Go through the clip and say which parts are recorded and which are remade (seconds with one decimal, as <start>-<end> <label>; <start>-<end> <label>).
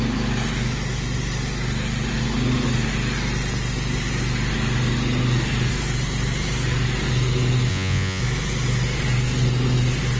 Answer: 0.0-7.7 recorded; 7.7-8.2 remade; 8.2-10.2 recorded